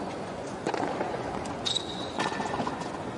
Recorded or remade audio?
remade